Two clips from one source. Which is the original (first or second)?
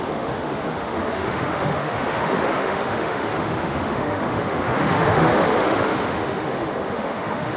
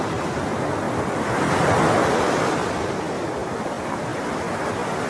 second